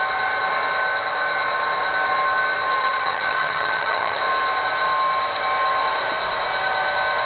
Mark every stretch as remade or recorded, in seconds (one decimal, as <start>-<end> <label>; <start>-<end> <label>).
0.0-2.8 recorded; 2.8-4.2 remade; 4.2-7.3 recorded